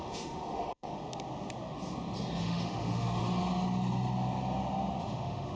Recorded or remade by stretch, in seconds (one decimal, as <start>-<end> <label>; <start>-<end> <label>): 0.0-1.0 remade; 1.0-2.4 recorded; 2.4-3.2 remade; 3.2-5.0 recorded; 5.0-5.6 remade